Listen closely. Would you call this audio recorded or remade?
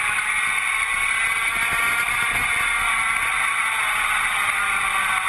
recorded